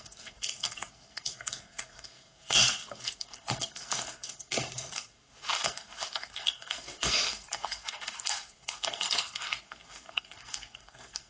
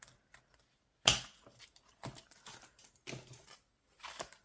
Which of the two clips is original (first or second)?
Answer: second